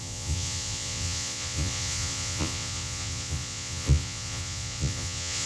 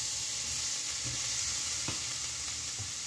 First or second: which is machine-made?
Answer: first